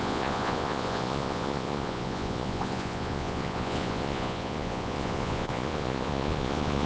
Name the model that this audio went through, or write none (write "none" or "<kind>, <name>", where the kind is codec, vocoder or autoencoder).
vocoder, Vocos